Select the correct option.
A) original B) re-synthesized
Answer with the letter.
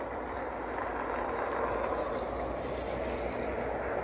A